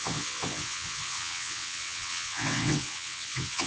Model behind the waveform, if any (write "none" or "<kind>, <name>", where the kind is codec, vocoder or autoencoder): vocoder, WaveNeXt